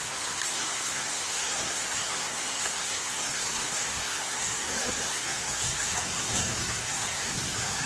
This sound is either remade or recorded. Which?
remade